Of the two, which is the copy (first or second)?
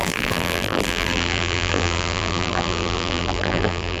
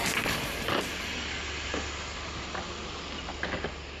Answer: first